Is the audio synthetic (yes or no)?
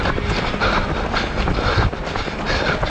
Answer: no